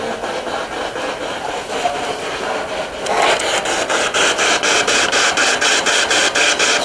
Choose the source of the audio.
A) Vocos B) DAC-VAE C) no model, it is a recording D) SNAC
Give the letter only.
C